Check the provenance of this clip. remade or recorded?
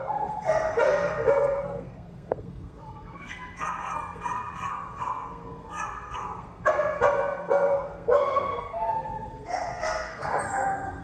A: remade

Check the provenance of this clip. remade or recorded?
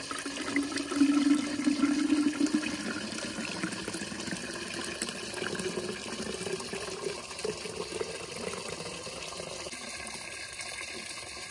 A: recorded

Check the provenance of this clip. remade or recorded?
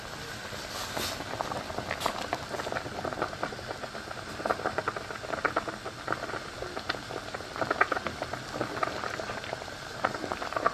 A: recorded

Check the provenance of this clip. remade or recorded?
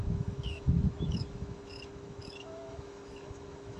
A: remade